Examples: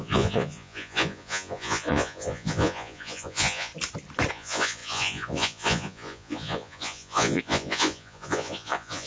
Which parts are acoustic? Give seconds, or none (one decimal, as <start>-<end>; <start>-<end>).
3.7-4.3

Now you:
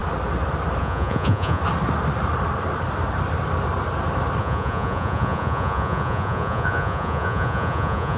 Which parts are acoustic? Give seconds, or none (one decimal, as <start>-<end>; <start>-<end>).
0.0-0.8; 1.6-4.4

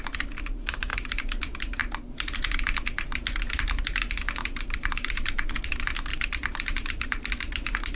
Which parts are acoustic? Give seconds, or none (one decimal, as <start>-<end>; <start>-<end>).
0.0-0.9; 1.4-4.4; 5.5-6.1; 7.3-7.9

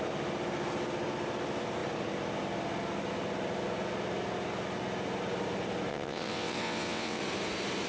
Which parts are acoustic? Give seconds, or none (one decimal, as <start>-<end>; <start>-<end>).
0.0-5.9; 7.2-7.9

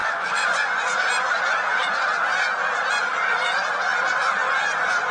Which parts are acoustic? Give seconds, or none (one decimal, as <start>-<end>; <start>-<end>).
0.8-5.1